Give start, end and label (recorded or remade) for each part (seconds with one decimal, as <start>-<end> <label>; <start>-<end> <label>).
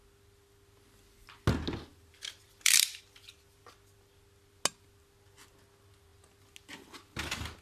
0.0-1.9 recorded; 1.9-3.0 remade; 3.0-7.6 recorded